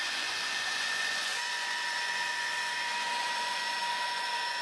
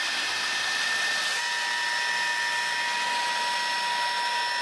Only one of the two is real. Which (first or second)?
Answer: second